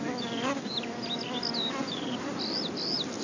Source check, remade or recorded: recorded